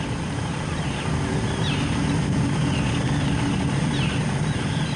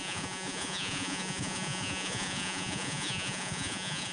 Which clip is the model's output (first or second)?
second